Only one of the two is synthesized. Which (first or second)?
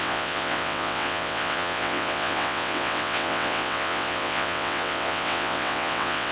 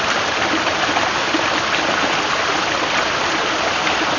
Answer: first